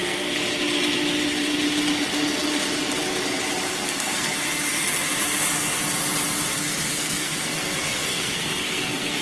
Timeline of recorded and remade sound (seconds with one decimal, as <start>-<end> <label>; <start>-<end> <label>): 0.0-0.4 remade; 0.4-3.7 recorded; 3.7-4.3 remade; 4.3-6.9 recorded; 6.9-9.2 remade

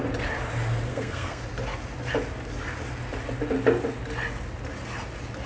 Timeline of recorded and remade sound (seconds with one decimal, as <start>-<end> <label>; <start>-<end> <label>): 0.0-0.9 recorded; 0.9-1.4 remade; 1.4-5.5 recorded